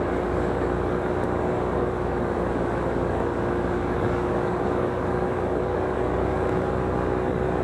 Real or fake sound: fake